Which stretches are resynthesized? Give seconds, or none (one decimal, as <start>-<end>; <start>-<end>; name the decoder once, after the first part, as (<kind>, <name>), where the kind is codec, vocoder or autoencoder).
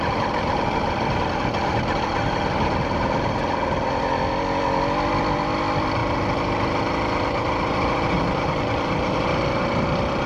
none